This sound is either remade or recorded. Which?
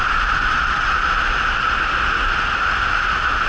recorded